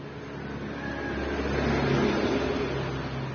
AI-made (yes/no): no